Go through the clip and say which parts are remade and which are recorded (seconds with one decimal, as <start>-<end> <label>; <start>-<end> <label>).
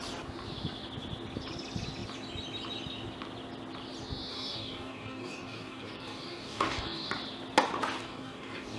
0.0-4.3 recorded; 4.3-7.1 remade; 7.1-8.0 recorded; 8.0-8.8 remade